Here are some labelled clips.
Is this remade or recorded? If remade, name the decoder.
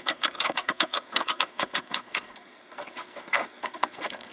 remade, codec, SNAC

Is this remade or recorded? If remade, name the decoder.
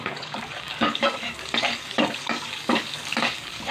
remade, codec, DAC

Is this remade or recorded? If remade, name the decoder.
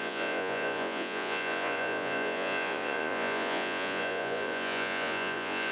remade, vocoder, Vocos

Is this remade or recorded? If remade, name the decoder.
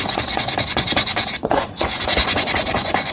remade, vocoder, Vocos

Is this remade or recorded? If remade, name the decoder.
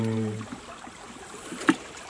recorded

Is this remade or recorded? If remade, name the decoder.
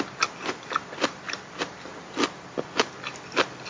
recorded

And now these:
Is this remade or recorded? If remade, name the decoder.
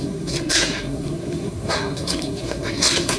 remade, codec, SNAC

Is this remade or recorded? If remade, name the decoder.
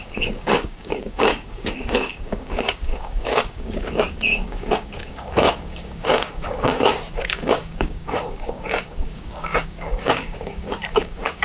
remade, codec, DAC